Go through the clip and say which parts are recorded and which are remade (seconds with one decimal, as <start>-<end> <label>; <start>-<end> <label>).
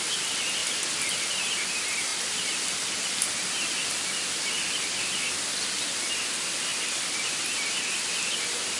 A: 0.0-8.8 recorded